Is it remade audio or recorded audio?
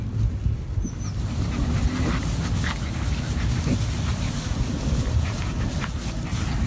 recorded